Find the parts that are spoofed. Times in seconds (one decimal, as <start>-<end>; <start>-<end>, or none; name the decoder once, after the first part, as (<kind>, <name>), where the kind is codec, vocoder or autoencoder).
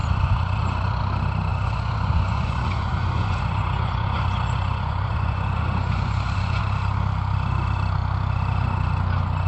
0.0-1.0 (vocoder, Vocos); 1.5-6.6